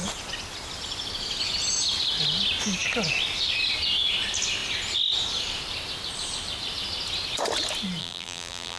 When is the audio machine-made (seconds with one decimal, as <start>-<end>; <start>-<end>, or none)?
8.0-8.8

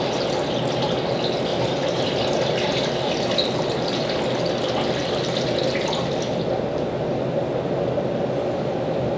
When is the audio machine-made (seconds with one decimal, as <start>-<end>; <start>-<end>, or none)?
1.5-3.1